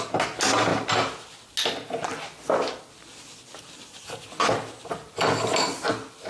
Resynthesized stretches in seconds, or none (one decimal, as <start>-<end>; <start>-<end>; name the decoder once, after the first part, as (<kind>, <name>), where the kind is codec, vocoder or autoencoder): none